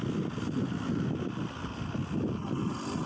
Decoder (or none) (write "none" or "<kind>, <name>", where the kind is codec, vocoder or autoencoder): none